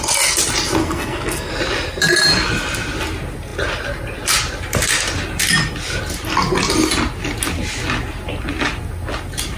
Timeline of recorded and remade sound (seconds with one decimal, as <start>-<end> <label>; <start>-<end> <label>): 0.0-0.8 recorded; 0.8-1.5 remade; 1.5-9.6 recorded